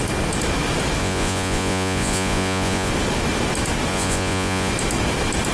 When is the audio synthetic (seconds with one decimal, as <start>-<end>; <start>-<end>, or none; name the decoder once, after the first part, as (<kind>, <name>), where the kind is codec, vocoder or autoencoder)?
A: 1.0-2.9 (vocoder, Vocos); 3.9-4.7